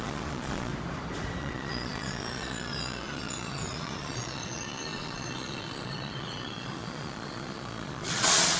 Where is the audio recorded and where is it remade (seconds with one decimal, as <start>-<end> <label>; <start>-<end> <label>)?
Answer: 0.0-0.7 remade; 0.7-1.4 recorded; 1.4-8.6 remade

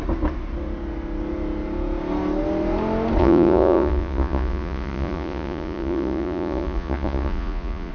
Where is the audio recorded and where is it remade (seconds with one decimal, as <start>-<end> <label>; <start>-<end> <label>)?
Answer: 0.0-3.2 recorded; 3.2-7.9 remade

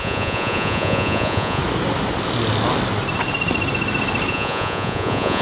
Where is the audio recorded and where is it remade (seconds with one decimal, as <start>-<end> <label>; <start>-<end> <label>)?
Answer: 0.0-1.6 remade; 1.6-4.3 recorded; 4.3-5.4 remade

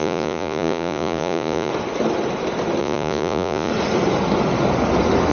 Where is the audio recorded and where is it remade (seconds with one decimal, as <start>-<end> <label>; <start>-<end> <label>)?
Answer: 0.0-1.7 remade; 1.7-2.8 recorded; 2.8-3.7 remade; 3.7-5.3 recorded

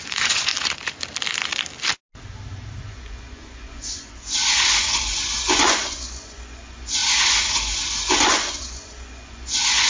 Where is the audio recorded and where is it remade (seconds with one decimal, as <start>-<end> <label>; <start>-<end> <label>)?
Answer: 0.0-0.5 remade; 0.5-2.8 recorded; 2.8-9.9 remade

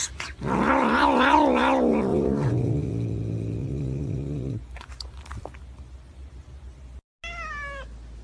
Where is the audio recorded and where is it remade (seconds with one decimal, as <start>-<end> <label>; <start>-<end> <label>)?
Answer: 0.0-2.1 recorded; 2.1-2.9 remade; 2.9-3.6 recorded; 3.6-5.1 remade; 5.1-8.2 recorded

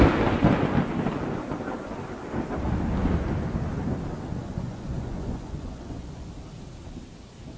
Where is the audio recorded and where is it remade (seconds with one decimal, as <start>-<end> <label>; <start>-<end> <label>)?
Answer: 0.0-4.4 recorded; 4.4-6.3 remade; 6.3-7.6 recorded